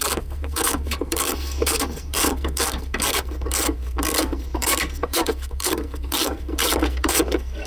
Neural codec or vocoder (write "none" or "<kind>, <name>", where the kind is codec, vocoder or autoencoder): codec, SNAC